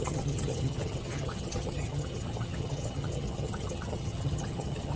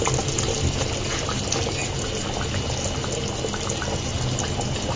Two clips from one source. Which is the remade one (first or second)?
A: first